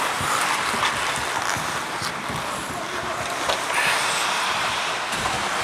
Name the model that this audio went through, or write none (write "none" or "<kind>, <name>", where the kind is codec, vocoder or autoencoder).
none